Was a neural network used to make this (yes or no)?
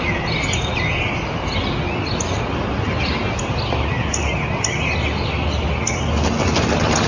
no